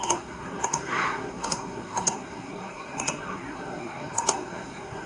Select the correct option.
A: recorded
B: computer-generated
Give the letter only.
B